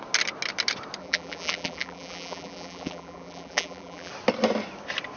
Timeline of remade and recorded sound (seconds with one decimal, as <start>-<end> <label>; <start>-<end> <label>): 0.0-1.0 recorded; 1.0-4.1 remade; 4.1-5.2 recorded